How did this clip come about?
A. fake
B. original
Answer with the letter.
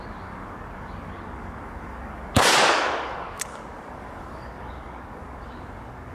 A